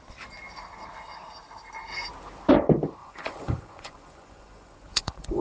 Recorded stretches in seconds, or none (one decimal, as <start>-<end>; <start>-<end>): 0.0-3.0